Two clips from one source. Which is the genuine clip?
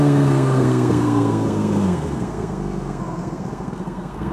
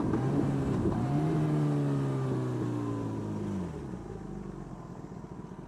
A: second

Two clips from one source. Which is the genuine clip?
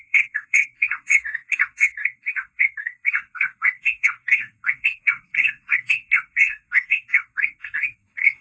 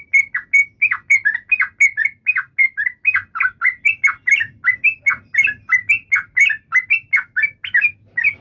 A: second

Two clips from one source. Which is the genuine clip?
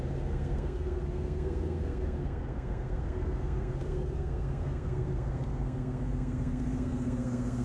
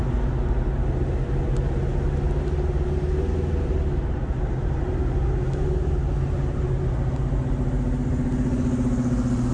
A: second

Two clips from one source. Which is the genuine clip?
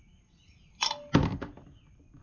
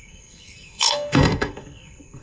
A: first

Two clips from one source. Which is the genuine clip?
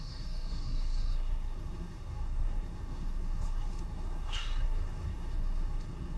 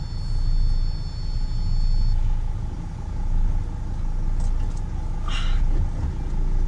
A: second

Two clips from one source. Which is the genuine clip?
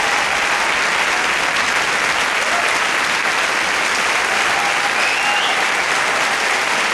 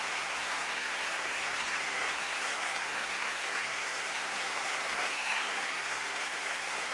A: first